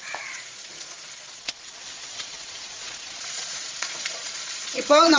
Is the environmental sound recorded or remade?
remade